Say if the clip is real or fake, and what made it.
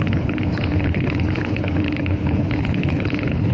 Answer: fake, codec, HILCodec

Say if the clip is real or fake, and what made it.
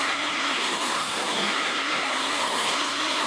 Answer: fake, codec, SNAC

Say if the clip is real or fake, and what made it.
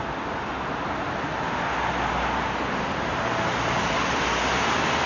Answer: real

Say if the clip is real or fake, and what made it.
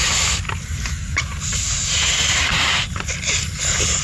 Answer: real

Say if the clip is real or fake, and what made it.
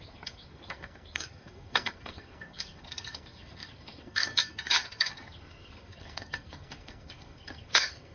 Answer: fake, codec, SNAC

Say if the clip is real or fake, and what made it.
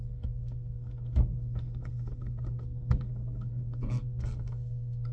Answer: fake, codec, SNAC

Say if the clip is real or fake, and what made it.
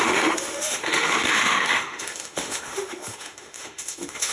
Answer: fake, autoencoder, DAC-VAE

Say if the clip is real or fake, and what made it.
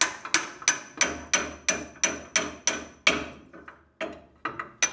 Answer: real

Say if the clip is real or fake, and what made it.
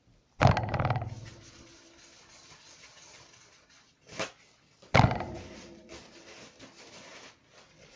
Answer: real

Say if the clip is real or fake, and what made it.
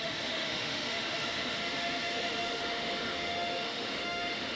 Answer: fake, autoencoder, DAC-VAE